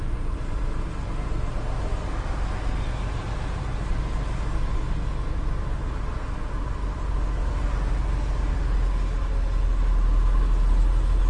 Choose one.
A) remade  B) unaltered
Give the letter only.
B